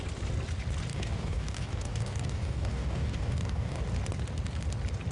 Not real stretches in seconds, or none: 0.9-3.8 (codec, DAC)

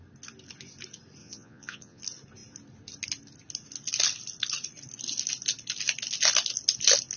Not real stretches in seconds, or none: 1.2-2.0 (vocoder, Vocos)

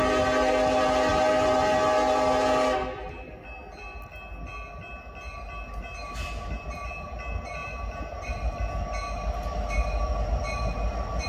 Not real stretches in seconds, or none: 7.6-8.3 (vocoder, BigVGAN v2)

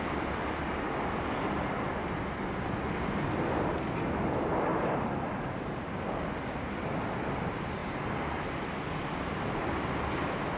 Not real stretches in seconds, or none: 4.7-5.9 (vocoder, BigVGAN v2)

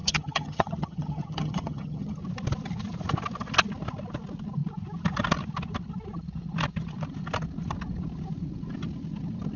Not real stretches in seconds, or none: 0.0-2.2 (vocoder, HiFi-GAN)